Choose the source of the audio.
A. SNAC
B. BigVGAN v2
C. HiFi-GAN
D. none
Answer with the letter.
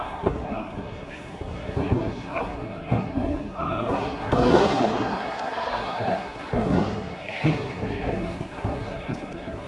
A